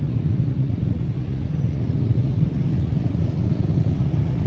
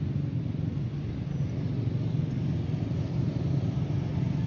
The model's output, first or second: first